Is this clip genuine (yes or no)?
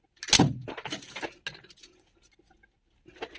yes